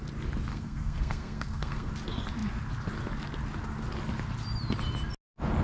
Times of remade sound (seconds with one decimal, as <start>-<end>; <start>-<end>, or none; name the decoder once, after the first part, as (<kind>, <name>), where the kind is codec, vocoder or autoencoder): 0.5-1.9 (codec, SNAC)